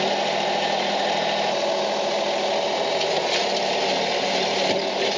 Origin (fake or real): real